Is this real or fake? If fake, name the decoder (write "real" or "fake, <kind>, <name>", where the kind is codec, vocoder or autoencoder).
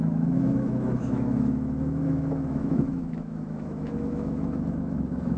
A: fake, autoencoder, DAC-VAE